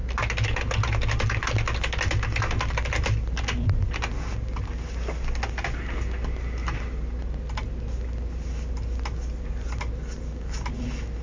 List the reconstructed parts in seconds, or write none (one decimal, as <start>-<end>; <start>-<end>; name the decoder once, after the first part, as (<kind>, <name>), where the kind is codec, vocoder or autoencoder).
none